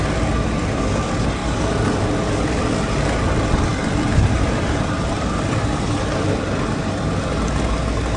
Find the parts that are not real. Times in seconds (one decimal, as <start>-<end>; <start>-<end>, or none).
1.4-2.6; 3.7-6.7